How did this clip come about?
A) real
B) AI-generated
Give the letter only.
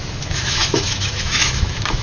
B